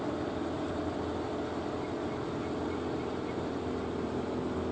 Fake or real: real